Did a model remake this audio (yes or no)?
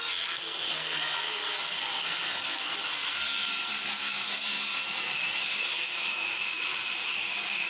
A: yes